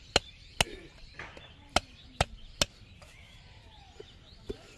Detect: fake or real real